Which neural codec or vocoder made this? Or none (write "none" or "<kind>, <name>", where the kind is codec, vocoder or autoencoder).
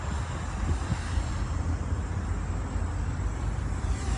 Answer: none